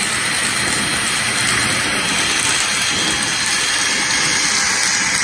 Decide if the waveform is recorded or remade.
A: recorded